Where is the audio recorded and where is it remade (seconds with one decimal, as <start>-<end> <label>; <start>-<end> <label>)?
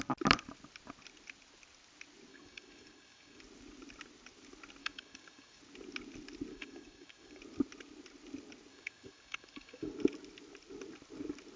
0.0-2.3 recorded; 2.3-3.4 remade; 3.4-4.8 recorded; 4.8-5.6 remade; 5.6-6.5 recorded; 6.5-7.4 remade; 7.4-8.7 recorded; 8.7-9.9 remade; 9.9-11.6 recorded